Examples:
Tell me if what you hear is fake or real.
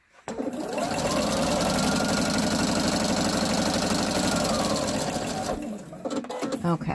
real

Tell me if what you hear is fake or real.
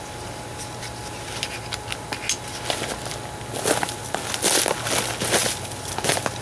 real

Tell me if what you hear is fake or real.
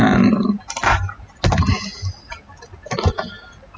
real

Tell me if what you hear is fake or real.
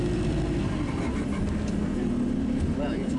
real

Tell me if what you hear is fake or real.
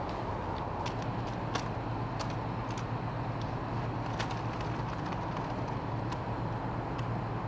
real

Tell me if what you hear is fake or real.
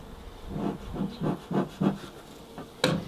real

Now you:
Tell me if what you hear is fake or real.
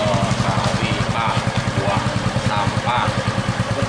real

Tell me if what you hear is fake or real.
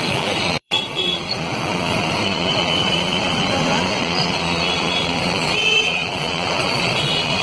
fake